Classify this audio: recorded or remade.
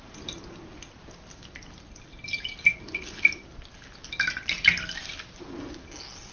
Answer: recorded